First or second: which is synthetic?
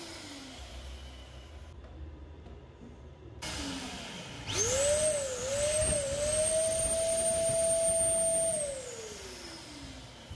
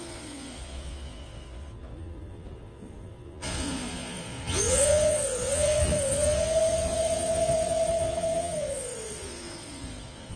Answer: second